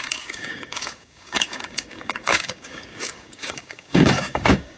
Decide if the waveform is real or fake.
fake